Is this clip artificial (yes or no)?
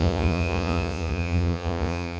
yes